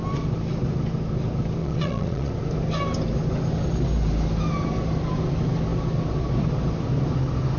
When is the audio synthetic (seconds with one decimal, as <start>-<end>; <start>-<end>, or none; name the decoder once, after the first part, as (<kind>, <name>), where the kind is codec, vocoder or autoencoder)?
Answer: 1.6-2.3 (vocoder, Vocos)